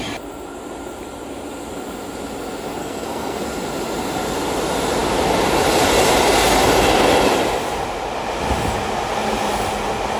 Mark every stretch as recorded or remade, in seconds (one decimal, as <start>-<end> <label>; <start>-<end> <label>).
0.0-2.8 recorded; 2.8-3.4 remade; 3.4-10.2 recorded